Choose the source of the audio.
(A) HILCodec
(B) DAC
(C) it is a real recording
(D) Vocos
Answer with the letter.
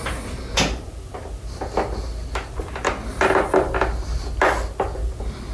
C